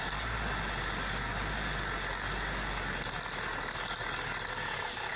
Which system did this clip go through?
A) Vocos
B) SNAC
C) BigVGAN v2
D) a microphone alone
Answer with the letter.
D